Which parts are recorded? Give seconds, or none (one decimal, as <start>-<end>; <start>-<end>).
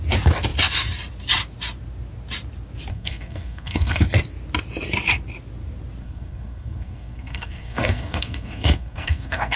0.0-2.9; 4.0-6.0